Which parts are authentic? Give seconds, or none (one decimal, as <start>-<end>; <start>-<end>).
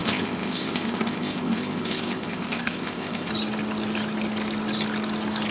3.3-5.5